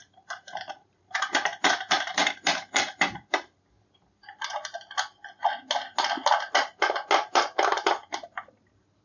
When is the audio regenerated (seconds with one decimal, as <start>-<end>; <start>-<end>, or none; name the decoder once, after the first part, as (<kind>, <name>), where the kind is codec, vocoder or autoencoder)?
0.0-3.6 (vocoder, BigVGAN v2); 7.3-9.0